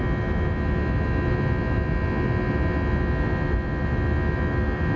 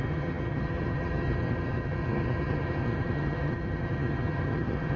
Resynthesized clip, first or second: second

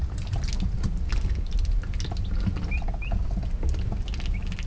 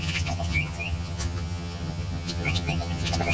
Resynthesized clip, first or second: second